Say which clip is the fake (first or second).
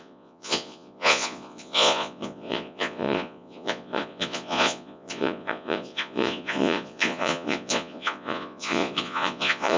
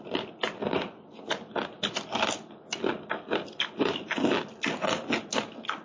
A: first